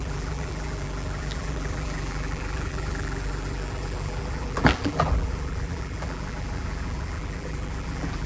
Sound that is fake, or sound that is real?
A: fake